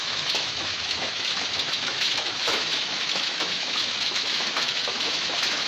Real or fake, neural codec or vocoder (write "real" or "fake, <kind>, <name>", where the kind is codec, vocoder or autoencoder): fake, autoencoder, DAC-VAE